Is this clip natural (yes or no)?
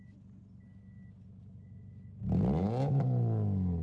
yes